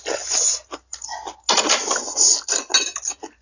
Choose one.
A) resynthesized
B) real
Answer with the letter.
B